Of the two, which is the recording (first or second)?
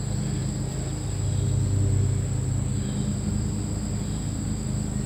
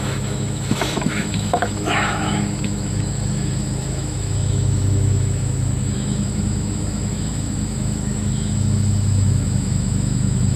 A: first